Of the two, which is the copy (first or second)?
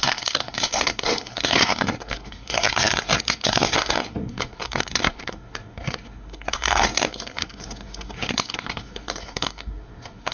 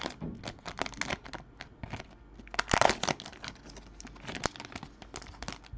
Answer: first